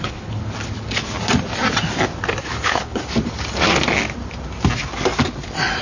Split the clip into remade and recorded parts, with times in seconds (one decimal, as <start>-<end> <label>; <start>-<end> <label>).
0.0-0.4 remade; 0.4-2.4 recorded; 2.4-3.0 remade; 3.0-5.8 recorded